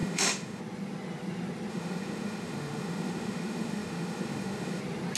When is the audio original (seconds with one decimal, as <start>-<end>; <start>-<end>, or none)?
0.6-1.7; 4.8-5.2